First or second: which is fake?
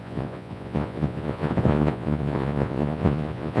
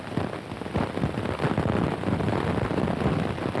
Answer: first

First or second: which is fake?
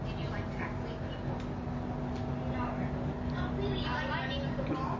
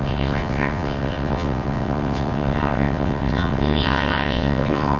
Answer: second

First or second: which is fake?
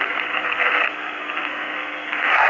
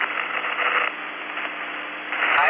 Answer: first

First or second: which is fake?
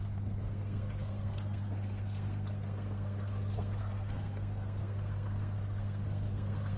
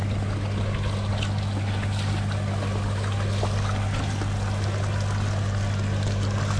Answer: first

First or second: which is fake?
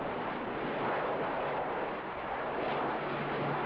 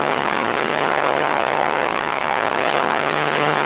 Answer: second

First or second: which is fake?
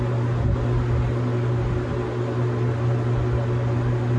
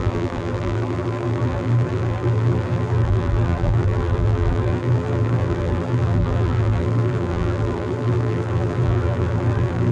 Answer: second